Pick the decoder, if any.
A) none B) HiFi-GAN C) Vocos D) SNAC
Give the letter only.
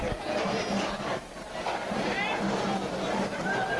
A